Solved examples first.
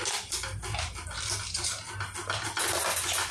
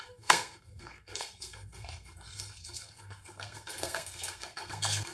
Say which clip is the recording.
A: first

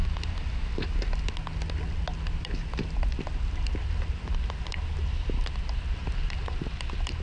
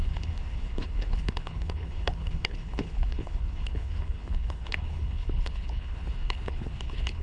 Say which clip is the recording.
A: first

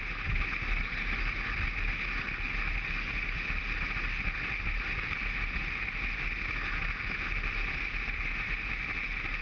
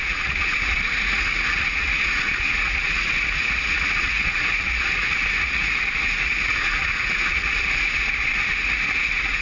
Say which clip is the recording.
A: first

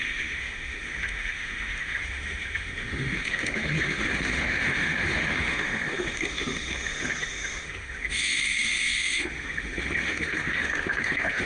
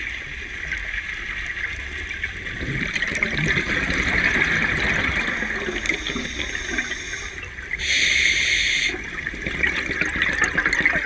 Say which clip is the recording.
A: second